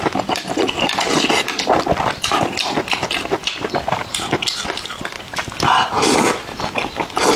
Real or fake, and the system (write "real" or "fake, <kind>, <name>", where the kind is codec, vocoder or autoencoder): real